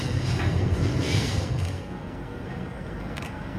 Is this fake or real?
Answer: fake